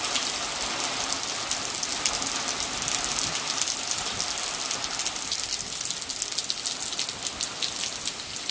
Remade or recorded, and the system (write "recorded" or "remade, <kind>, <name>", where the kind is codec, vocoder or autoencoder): recorded